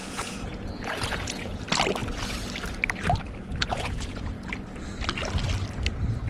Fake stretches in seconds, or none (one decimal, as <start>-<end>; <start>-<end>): 0.0-1.6; 3.4-4.5